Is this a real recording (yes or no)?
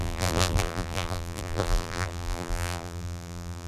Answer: no